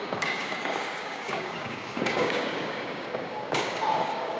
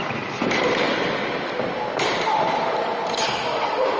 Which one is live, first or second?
second